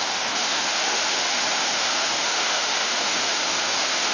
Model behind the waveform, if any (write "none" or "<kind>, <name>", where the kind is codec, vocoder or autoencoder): autoencoder, DAC-VAE